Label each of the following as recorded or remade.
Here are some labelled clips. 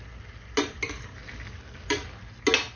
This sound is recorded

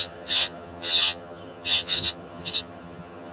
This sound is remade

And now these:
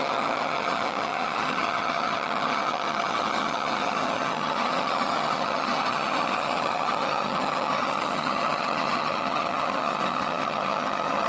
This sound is remade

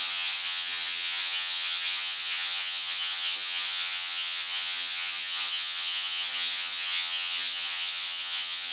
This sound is remade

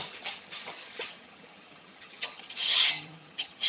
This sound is remade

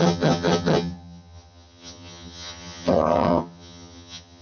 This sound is remade